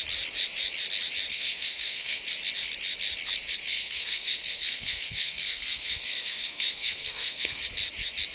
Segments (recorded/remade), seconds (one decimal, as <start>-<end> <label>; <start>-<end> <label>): 0.0-1.3 recorded; 1.3-2.2 remade; 2.2-3.7 recorded; 3.7-7.6 remade; 7.6-8.3 recorded